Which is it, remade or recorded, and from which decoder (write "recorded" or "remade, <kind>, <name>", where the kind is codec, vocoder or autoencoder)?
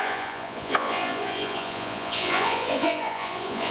remade, vocoder, Vocos